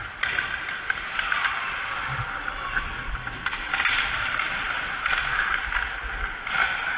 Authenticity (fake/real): real